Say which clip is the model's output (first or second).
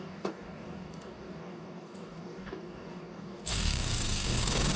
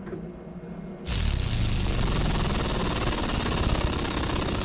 first